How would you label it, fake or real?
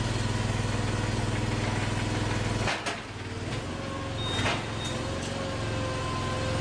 real